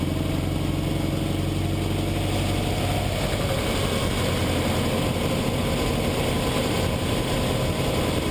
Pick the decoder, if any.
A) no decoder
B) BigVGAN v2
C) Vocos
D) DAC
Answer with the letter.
A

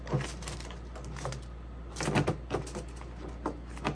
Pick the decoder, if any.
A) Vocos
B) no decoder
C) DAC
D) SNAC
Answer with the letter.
B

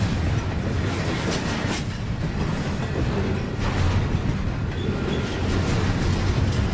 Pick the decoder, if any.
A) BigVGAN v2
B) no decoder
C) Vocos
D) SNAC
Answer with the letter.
B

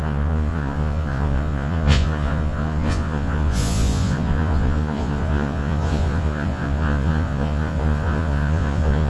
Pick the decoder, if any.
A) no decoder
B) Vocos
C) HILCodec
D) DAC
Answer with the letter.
B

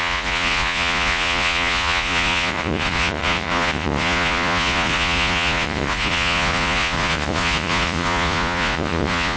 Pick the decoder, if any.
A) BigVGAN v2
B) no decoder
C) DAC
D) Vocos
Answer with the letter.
D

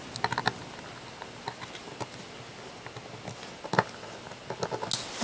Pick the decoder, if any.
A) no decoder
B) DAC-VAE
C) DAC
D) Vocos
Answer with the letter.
A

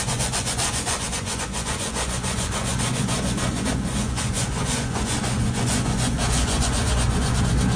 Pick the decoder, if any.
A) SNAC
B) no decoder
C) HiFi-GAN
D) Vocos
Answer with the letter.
D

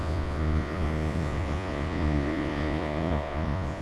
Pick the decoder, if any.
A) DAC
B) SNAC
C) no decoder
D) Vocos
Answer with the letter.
D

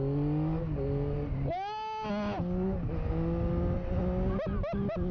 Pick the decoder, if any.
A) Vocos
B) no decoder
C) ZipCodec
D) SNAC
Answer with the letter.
B